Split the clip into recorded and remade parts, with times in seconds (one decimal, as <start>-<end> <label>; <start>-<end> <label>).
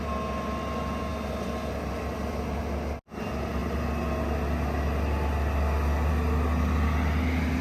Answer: 0.0-7.6 recorded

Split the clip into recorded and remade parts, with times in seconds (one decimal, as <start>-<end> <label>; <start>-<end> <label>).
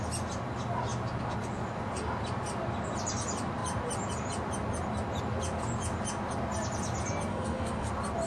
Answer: 0.0-7.3 recorded; 7.3-7.9 remade; 7.9-8.3 recorded